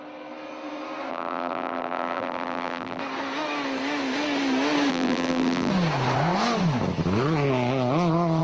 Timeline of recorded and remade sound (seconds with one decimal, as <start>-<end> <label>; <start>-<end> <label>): 0.0-1.1 recorded; 1.1-3.0 remade; 3.0-4.9 recorded; 4.9-5.7 remade; 5.7-8.4 recorded